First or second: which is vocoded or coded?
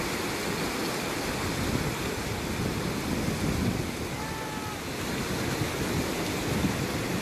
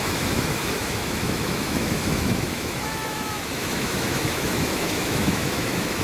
second